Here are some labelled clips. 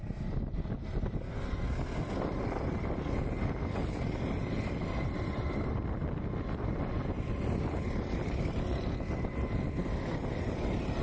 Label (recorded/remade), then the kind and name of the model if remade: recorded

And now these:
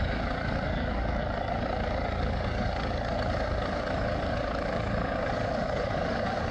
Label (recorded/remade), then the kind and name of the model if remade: remade, codec, DAC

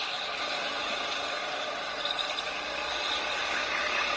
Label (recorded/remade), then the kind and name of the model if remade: recorded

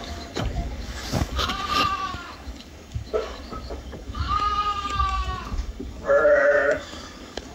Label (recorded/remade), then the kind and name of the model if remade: remade, codec, DAC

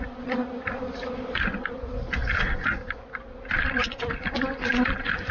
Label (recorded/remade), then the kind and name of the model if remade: recorded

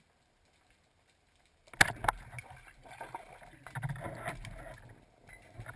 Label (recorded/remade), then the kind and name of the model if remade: recorded